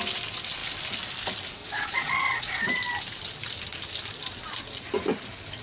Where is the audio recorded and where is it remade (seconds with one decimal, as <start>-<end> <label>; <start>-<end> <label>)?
0.0-1.6 recorded; 1.6-2.8 remade; 2.8-5.6 recorded